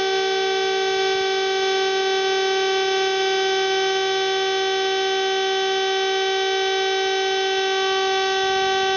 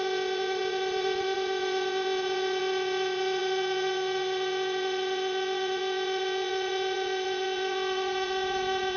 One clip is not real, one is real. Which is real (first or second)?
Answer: first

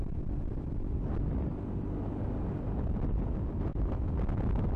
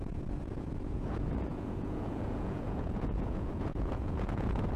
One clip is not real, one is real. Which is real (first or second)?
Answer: first